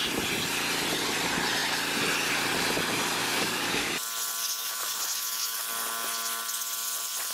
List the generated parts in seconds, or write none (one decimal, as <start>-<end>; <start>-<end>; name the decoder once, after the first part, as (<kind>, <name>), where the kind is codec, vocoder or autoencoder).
3.2-3.9 (codec, DAC); 4.6-5.6